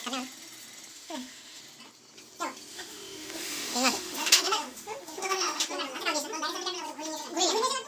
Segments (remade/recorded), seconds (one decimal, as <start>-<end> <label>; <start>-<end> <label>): 0.0-0.9 recorded; 0.9-1.6 remade; 1.6-2.7 recorded; 2.7-5.7 remade; 5.7-7.9 recorded